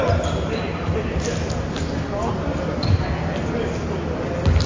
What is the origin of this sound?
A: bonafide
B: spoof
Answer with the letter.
A